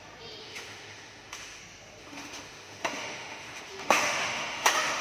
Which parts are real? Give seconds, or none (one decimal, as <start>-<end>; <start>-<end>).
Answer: 0.0-0.4; 1.6-2.0